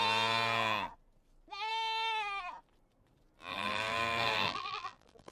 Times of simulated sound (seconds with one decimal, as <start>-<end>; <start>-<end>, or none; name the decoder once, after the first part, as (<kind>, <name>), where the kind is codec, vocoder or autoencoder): 3.5-5.3 (vocoder, BigVGAN v2)